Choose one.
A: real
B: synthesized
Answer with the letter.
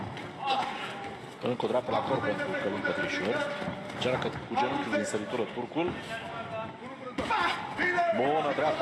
A